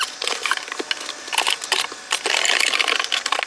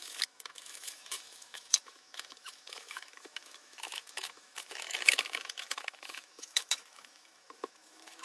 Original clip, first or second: first